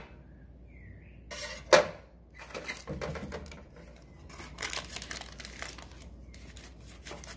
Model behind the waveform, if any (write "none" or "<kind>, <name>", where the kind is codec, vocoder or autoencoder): none